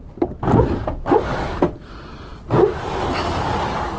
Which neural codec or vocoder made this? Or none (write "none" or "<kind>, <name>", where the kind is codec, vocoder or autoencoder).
none